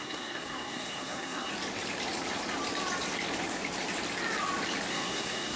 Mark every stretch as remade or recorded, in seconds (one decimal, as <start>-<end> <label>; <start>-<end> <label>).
0.0-1.5 remade; 1.5-4.9 recorded; 4.9-5.6 remade